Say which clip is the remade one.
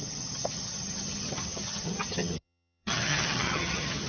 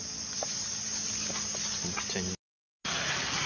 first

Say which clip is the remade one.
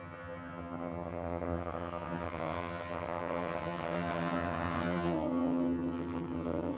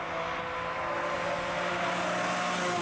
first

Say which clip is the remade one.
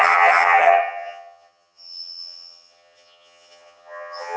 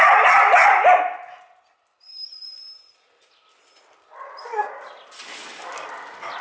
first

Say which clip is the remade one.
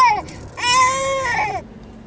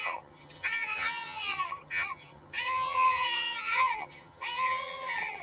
second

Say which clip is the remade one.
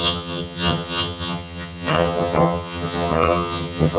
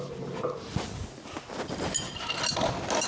first